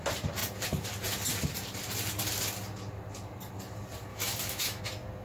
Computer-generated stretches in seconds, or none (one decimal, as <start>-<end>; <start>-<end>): 4.1-4.8